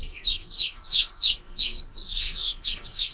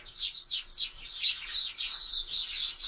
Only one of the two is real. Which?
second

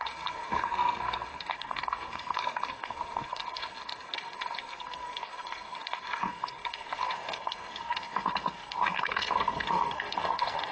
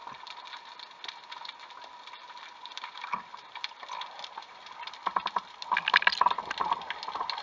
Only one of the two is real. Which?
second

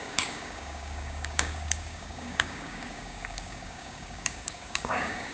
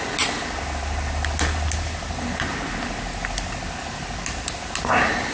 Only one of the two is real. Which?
second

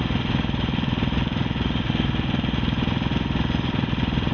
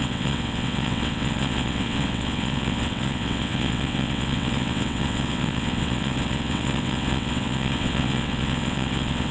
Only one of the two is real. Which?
first